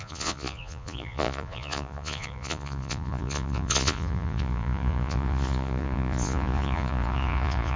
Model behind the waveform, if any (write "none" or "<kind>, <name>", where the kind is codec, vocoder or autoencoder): vocoder, Vocos